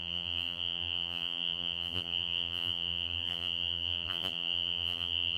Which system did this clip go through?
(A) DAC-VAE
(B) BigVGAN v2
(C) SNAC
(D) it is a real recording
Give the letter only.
B